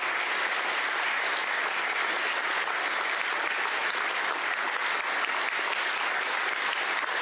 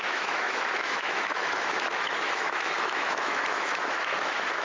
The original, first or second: first